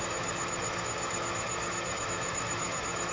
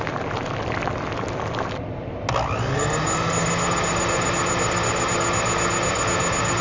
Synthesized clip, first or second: first